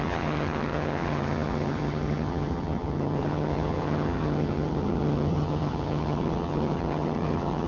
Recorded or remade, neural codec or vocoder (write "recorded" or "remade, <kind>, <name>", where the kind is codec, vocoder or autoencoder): remade, vocoder, HiFi-GAN